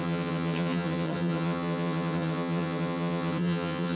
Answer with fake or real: fake